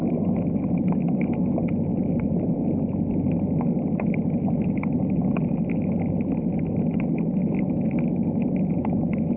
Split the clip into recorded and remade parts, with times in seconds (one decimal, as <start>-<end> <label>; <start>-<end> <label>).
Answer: 0.0-9.4 recorded